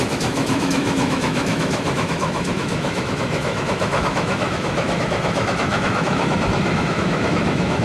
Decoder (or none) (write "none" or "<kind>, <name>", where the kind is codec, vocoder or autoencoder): autoencoder, DAC-VAE